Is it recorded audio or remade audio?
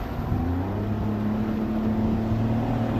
recorded